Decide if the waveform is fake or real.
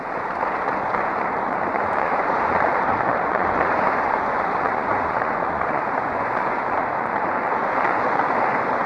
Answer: fake